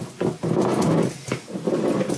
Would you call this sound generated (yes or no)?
no